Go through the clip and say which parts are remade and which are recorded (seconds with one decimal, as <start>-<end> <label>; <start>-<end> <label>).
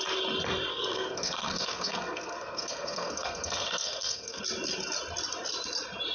0.0-0.7 recorded; 0.7-4.4 remade; 4.4-6.1 recorded